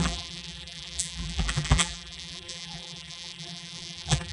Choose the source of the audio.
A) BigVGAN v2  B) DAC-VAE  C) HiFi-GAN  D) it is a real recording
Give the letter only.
A